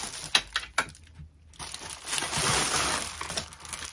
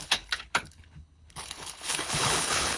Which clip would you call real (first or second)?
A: first